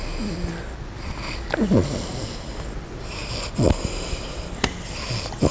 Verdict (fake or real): real